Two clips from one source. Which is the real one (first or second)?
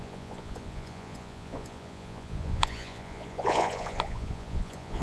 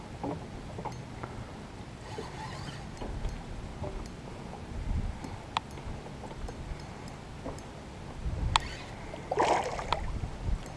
second